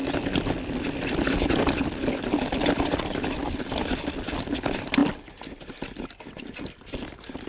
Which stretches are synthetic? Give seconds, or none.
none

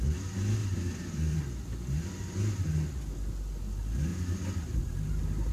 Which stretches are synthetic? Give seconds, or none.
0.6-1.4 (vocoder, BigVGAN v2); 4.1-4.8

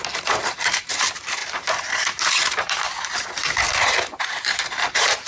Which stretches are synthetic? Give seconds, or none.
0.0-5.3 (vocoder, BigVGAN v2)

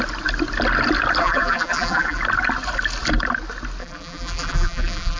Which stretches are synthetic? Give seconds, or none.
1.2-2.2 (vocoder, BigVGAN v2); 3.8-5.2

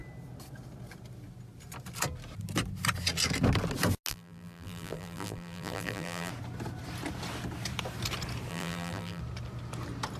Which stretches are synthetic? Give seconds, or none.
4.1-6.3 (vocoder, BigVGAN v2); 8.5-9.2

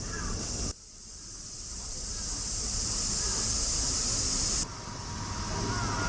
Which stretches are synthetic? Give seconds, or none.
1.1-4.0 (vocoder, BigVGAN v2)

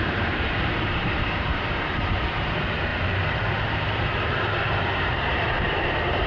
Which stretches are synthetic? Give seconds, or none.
0.0-2.9 (vocoder, BigVGAN v2); 3.6-6.3

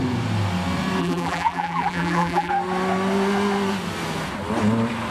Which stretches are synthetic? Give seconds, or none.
1.0-2.5 (vocoder, BigVGAN v2)